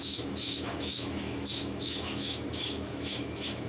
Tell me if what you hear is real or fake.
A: fake